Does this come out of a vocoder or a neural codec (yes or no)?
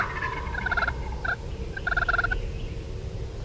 no